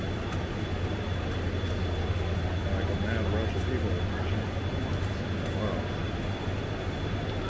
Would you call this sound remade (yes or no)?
no